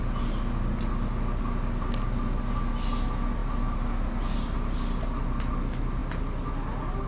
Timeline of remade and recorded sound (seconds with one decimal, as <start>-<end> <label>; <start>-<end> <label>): 0.0-7.1 recorded